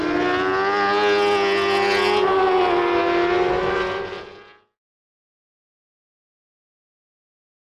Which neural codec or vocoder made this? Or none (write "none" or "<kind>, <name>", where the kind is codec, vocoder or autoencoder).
none